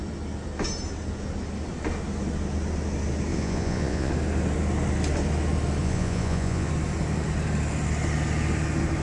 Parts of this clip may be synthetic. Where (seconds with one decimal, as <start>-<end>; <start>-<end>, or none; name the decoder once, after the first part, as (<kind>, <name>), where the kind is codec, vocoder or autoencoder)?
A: 3.3-4.1 (vocoder, Vocos); 5.8-6.7